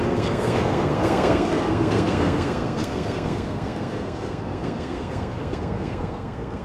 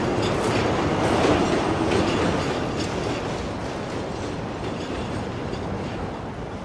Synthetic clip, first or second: first